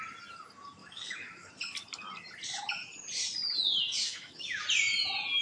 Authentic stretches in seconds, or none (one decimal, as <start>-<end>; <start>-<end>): 0.0-0.8; 1.5-4.0; 4.6-5.4